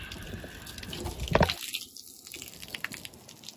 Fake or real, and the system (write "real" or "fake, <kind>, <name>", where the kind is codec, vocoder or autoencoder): real